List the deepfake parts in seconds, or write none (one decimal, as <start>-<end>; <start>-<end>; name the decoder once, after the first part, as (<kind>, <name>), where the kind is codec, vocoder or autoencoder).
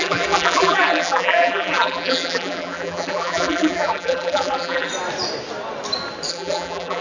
0.0-4.9 (vocoder, BigVGAN v2); 6.3-7.0